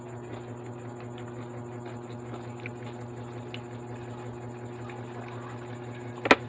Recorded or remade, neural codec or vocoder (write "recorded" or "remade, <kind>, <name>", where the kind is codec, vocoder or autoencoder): recorded